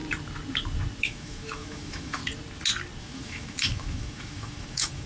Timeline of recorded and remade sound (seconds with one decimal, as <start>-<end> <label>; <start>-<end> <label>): 0.0-1.0 recorded; 1.0-2.2 remade; 2.2-3.0 recorded; 3.0-5.1 remade